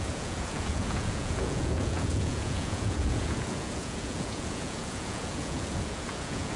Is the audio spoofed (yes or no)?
yes